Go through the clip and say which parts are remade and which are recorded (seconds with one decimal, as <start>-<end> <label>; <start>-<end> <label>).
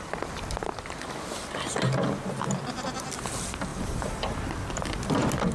0.0-3.7 recorded; 3.7-4.5 remade; 4.5-5.5 recorded